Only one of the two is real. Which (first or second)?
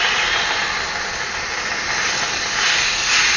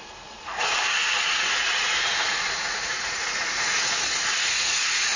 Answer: first